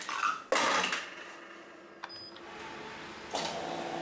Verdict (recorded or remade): recorded